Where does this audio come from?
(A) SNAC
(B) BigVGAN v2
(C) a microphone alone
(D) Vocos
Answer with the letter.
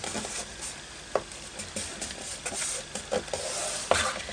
C